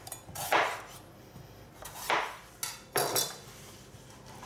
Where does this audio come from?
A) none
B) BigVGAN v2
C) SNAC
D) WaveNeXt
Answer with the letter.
A